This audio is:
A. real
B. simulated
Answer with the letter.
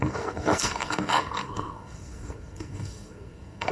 B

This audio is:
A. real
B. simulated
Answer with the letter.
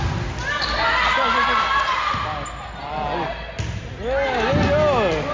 A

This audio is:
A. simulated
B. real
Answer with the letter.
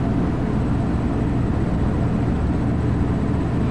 B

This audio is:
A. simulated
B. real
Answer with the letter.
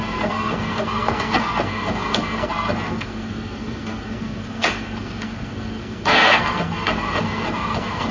A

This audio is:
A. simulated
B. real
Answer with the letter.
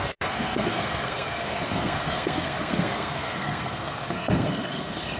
A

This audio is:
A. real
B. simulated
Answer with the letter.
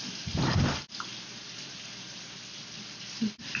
A